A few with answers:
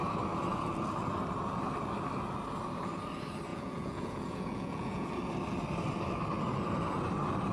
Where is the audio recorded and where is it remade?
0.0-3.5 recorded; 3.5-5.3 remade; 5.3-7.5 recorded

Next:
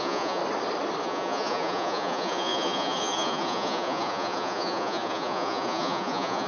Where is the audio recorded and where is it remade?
0.0-0.4 remade; 0.4-1.0 recorded; 1.0-6.5 remade

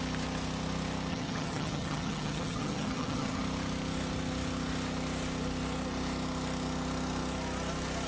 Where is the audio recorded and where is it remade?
0.0-1.1 recorded; 1.1-3.4 remade; 3.4-8.1 recorded